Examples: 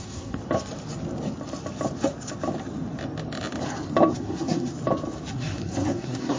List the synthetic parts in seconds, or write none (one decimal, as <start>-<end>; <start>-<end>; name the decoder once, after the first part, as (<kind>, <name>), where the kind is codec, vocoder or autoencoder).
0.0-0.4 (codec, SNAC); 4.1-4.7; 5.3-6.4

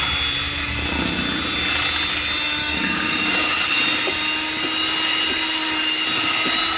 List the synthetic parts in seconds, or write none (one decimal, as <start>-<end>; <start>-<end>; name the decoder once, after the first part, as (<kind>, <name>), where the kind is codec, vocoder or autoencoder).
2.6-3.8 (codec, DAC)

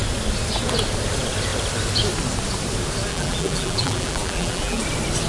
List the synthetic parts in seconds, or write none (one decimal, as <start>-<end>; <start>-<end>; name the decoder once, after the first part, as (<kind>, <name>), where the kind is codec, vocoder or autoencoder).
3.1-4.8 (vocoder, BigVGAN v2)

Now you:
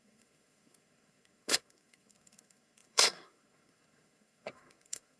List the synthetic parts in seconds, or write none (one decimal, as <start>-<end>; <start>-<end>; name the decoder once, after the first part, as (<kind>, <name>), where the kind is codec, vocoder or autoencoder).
0.0-5.2 (codec, SNAC)

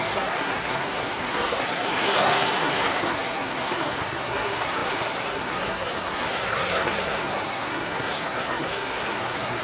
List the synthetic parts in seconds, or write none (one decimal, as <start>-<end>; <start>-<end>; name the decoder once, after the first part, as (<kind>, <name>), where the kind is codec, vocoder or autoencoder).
0.0-9.6 (codec, SNAC)